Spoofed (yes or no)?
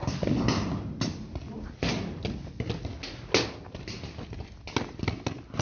no